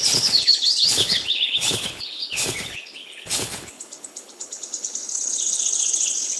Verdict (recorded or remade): remade